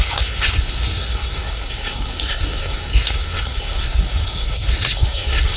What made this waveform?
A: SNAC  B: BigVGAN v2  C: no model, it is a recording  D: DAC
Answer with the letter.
A